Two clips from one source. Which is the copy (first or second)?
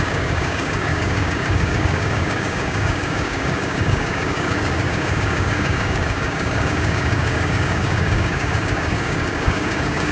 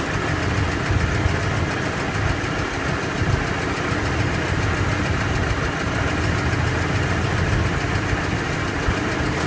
first